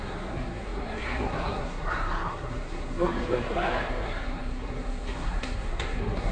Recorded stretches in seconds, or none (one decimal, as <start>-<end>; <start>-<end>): none